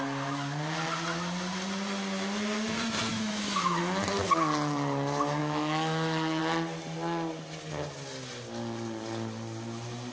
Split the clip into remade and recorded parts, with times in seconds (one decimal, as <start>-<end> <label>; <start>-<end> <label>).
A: 0.0-3.1 recorded; 3.1-3.8 remade; 3.8-5.4 recorded; 5.4-6.4 remade; 6.4-10.1 recorded

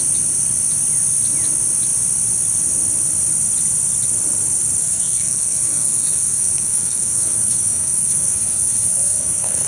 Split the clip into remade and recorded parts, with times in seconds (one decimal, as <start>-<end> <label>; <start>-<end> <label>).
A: 0.0-4.8 recorded; 4.8-9.7 remade

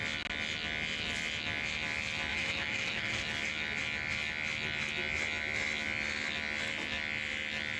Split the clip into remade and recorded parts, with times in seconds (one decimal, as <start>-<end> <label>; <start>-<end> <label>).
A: 0.0-2.3 recorded; 2.3-3.2 remade; 3.2-7.8 recorded

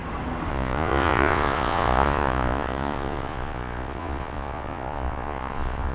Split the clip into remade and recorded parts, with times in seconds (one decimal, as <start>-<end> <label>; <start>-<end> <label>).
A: 0.0-0.5 recorded; 0.5-5.9 remade